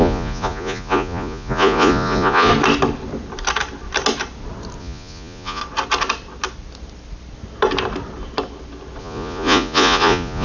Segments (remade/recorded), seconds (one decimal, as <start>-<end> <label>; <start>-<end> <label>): 0.0-2.5 remade; 2.5-4.8 recorded; 4.8-5.6 remade; 5.6-9.0 recorded; 9.0-10.4 remade

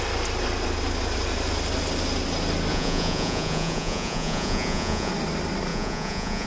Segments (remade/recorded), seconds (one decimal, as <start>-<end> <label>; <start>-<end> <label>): 0.0-2.7 recorded; 2.7-5.1 remade; 5.1-5.7 recorded; 5.7-6.5 remade

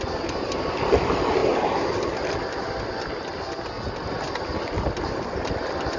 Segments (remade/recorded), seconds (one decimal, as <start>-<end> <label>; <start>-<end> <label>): 0.0-6.0 recorded

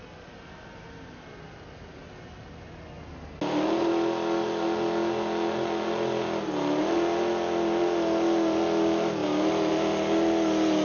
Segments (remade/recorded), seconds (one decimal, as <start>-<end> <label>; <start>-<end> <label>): 0.0-10.8 recorded